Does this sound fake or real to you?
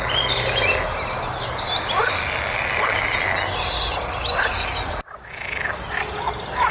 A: real